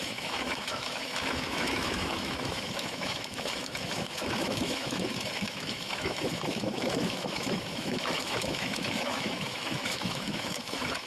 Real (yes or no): no